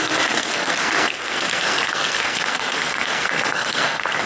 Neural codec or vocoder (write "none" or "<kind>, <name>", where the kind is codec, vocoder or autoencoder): codec, SNAC